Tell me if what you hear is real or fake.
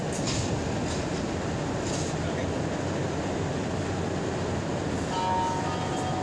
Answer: real